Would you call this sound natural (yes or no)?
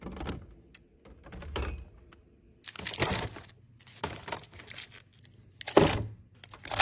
yes